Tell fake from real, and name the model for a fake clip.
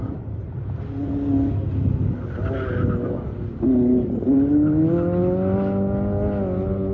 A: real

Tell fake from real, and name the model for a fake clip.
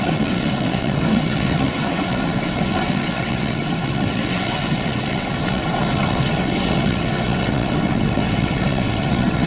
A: fake, vocoder, WaveNeXt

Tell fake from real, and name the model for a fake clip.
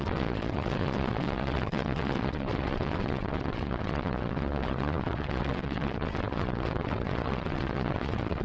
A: fake, vocoder, WaveNeXt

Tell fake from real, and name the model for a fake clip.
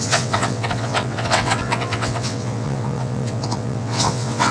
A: fake, vocoder, WaveNeXt